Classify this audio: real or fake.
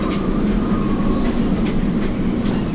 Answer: real